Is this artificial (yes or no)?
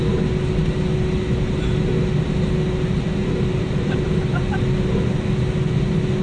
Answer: no